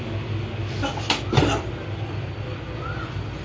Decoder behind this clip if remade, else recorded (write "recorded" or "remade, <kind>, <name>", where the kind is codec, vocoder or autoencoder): recorded